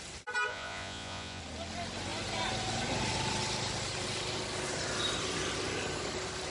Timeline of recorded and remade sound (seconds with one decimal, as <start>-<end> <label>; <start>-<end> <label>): 0.0-0.5 recorded; 0.5-1.4 remade; 1.4-6.5 recorded